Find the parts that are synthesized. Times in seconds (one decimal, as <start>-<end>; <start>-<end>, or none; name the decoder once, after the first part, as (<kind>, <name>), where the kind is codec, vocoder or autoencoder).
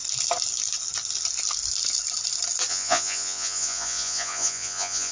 2.7-5.1 (vocoder, Vocos)